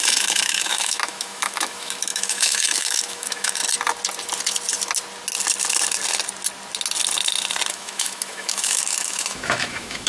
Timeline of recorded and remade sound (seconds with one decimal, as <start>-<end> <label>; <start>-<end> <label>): 0.0-3.6 remade; 3.6-7.7 recorded; 7.7-10.1 remade

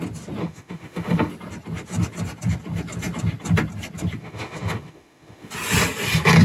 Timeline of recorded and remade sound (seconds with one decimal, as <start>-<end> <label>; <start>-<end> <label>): 0.0-0.4 recorded; 0.4-1.3 remade; 1.3-4.2 recorded; 4.2-5.5 remade; 5.5-6.4 recorded

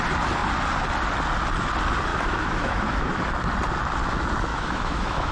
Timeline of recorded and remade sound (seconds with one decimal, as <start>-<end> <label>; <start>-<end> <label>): 0.0-2.1 recorded; 2.1-3.2 remade; 3.2-4.5 recorded; 4.5-5.3 remade